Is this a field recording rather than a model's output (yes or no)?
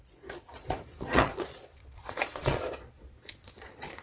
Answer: no